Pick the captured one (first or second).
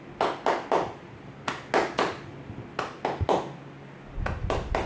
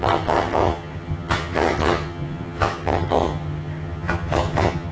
first